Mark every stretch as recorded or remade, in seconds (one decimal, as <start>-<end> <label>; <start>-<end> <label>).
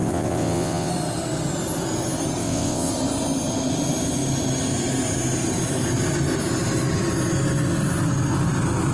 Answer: 0.0-0.9 remade; 0.9-2.4 recorded; 2.4-2.9 remade; 2.9-8.9 recorded